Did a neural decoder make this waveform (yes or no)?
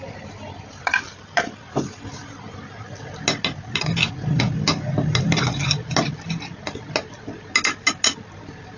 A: no